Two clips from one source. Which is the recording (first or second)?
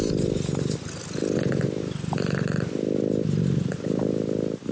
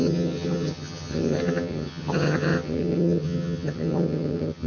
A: first